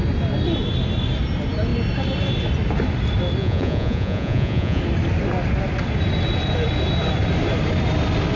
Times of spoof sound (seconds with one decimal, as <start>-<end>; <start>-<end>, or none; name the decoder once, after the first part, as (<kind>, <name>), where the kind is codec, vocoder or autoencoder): 3.4-4.8 (vocoder, Vocos)